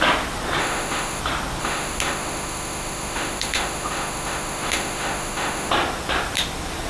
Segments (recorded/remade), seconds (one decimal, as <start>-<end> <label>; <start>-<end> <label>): 0.0-0.6 recorded; 0.6-1.2 remade; 1.2-1.6 recorded; 1.6-5.7 remade; 5.7-6.9 recorded